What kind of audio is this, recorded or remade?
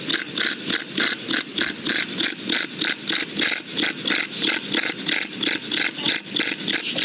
recorded